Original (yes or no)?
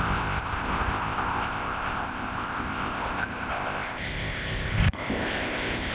no